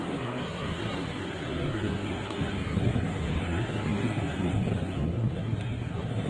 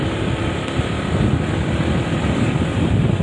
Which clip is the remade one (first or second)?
first